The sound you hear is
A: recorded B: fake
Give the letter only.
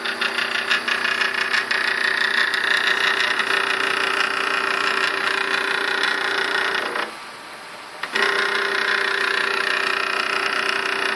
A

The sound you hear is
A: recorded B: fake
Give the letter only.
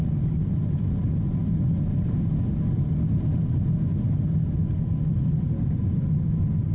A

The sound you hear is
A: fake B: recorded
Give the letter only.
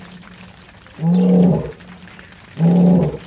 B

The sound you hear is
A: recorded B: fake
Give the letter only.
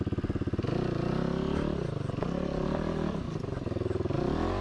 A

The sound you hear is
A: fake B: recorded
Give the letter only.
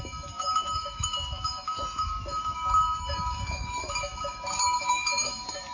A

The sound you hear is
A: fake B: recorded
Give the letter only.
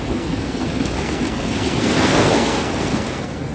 A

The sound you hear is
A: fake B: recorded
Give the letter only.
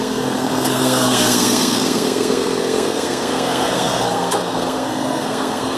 A